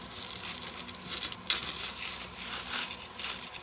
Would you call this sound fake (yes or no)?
no